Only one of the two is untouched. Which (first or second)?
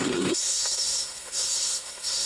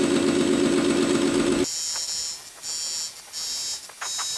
second